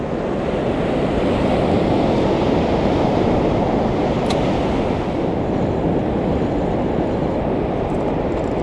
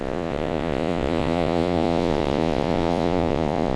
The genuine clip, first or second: first